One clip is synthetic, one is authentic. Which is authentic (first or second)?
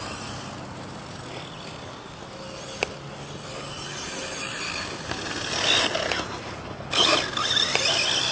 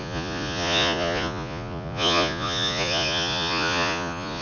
first